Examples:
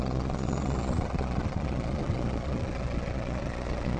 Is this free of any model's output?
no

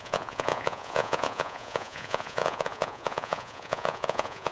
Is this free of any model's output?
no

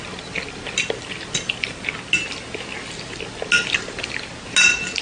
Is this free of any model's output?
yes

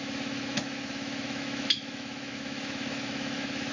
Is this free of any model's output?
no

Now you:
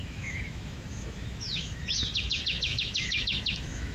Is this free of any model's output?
no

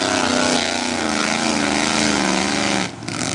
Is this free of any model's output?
yes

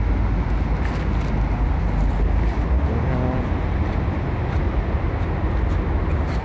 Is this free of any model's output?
yes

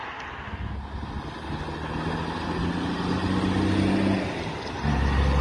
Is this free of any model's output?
yes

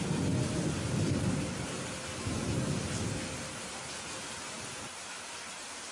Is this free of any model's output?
yes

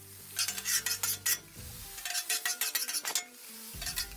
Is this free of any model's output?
yes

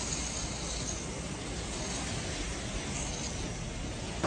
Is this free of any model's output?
yes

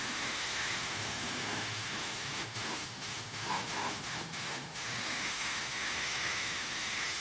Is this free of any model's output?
no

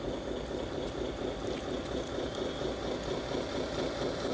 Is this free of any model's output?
yes